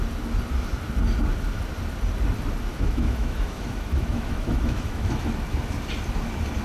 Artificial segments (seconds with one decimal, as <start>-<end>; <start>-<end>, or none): 2.7-5.1